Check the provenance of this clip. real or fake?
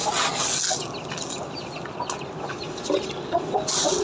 real